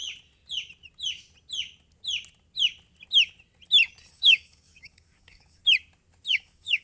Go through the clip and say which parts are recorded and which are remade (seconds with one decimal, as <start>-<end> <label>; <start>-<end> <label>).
0.0-4.1 recorded; 4.1-5.6 remade; 5.6-6.3 recorded; 6.3-6.8 remade